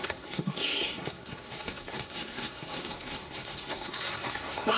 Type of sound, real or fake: fake